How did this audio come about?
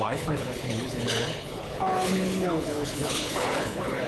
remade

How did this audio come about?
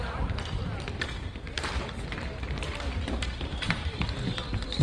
recorded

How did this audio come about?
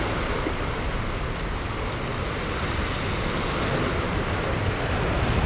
recorded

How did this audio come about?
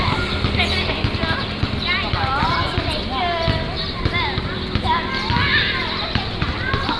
recorded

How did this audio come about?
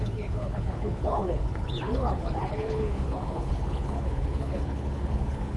remade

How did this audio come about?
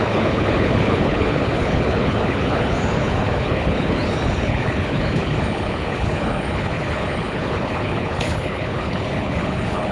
remade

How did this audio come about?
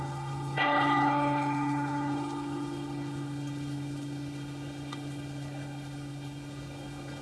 remade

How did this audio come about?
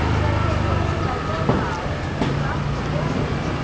recorded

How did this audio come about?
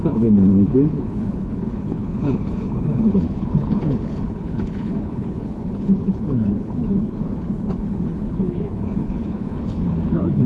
remade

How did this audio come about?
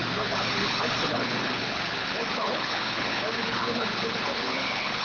remade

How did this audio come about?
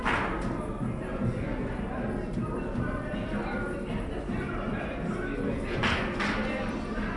recorded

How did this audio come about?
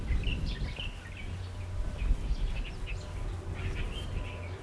recorded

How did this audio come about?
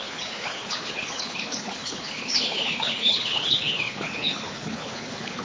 remade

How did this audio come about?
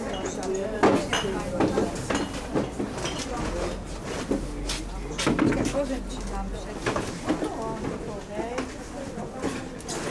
recorded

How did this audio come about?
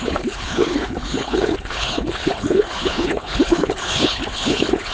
remade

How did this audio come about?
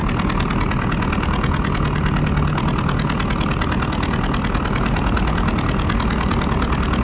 recorded